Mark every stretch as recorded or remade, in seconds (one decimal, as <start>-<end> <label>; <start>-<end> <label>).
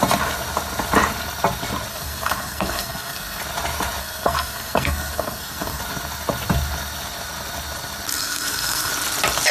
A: 0.0-1.9 recorded; 1.9-3.4 remade; 3.4-4.0 recorded; 4.0-5.8 remade; 5.8-8.1 recorded; 8.1-8.9 remade; 8.9-9.5 recorded